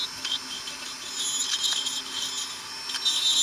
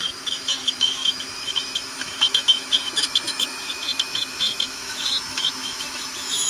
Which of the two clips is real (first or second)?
first